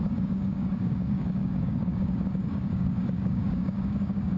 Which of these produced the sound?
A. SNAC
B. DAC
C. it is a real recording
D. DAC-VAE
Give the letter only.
B